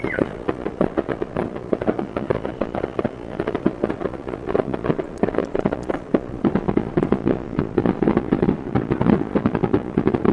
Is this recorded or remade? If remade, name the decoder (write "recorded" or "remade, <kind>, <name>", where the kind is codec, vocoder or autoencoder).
remade, vocoder, Vocos